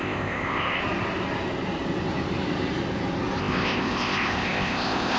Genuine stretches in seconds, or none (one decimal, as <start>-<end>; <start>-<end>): 0.8-3.4